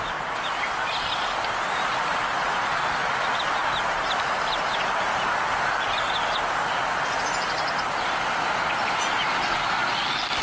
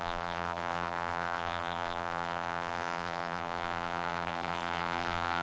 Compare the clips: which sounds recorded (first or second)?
first